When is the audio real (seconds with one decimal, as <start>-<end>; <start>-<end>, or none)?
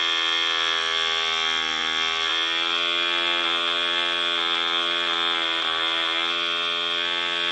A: 0.0-7.5